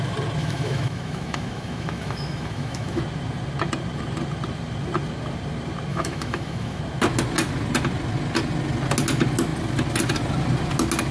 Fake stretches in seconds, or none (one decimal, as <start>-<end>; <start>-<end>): 0.4-3.0; 5.9-6.8